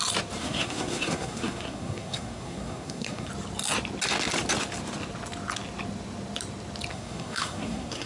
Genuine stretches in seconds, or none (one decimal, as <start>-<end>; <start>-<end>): 0.0-0.4; 3.3-6.9